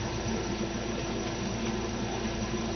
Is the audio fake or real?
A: real